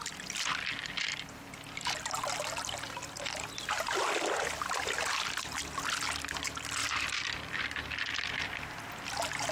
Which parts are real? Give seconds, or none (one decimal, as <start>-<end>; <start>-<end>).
0.0-6.8; 8.0-9.5